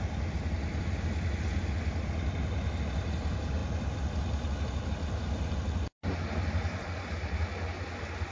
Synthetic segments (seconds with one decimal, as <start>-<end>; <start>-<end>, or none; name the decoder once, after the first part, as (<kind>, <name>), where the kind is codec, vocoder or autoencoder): none